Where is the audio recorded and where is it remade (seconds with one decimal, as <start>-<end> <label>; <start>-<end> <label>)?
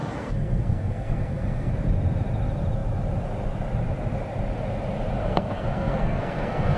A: 0.0-1.7 remade; 1.7-5.2 recorded; 5.2-6.8 remade